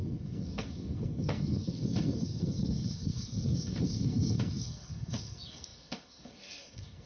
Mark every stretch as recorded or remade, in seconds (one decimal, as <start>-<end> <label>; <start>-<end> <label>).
0.0-7.1 remade